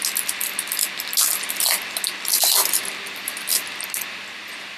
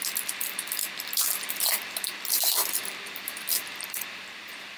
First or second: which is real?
first